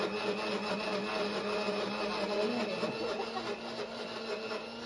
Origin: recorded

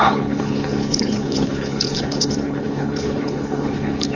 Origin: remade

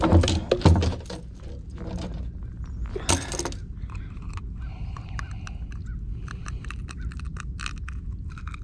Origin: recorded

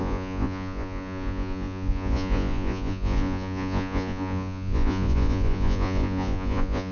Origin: remade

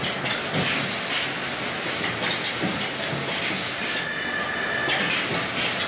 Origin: recorded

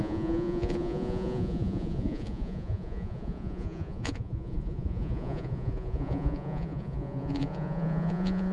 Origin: remade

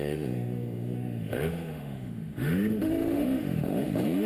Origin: remade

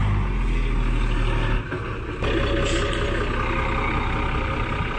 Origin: recorded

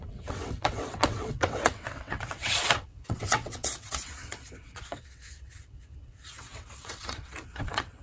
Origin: remade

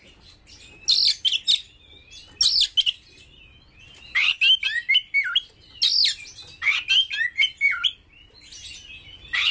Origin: recorded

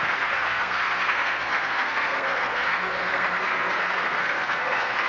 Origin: remade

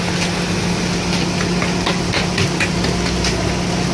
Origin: recorded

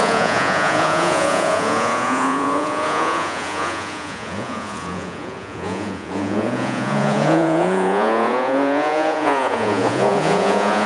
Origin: remade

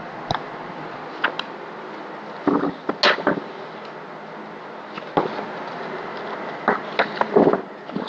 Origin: recorded